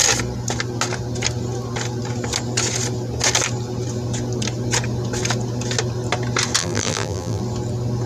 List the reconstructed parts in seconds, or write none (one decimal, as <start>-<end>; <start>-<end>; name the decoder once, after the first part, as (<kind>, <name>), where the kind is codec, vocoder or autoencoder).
6.6-7.4 (vocoder, BigVGAN v2)